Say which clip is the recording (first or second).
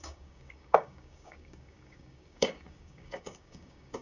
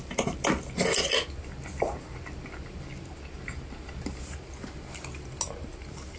second